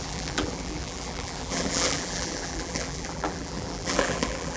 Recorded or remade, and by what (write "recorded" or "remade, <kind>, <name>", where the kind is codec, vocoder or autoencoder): remade, vocoder, BigVGAN v2